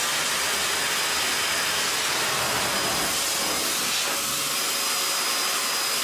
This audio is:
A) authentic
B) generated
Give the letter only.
A